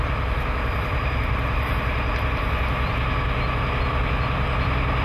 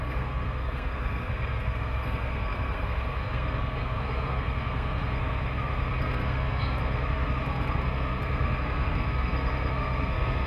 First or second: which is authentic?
first